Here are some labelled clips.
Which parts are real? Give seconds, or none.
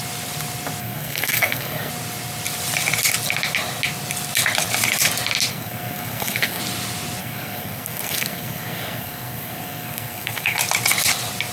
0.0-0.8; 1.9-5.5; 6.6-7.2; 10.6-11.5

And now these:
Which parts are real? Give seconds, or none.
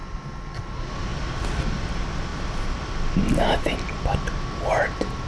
0.0-5.3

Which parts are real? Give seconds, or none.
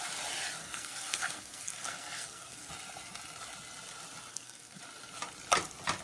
0.0-0.6; 2.7-4.3; 4.8-6.0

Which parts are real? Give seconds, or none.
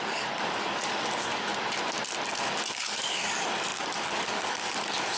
1.5-2.4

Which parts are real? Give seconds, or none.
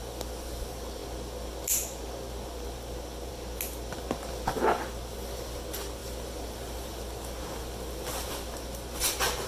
0.0-9.5